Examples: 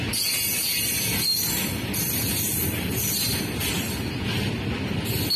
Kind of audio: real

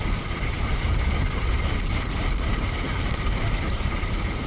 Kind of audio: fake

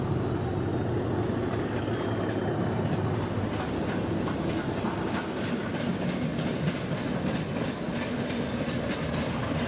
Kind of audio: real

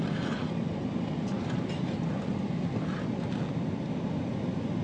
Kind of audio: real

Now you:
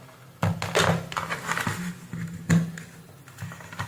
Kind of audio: real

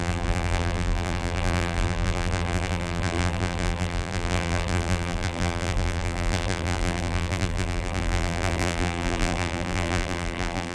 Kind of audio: fake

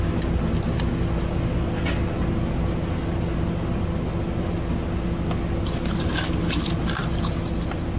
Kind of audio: real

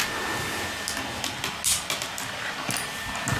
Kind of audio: real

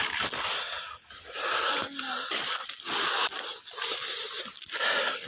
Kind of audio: real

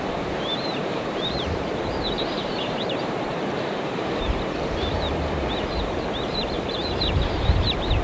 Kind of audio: fake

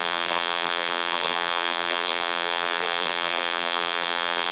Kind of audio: fake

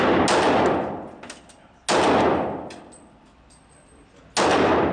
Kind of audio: real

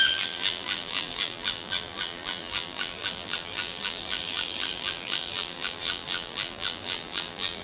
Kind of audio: fake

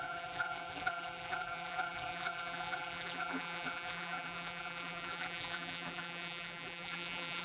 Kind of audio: fake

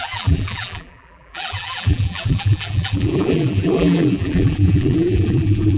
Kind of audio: fake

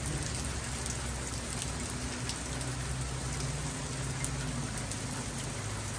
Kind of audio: real